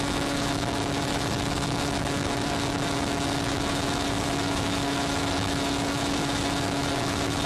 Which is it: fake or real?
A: fake